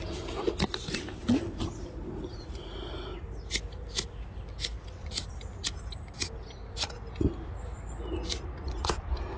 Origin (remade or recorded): recorded